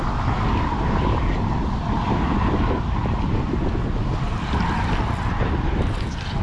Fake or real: real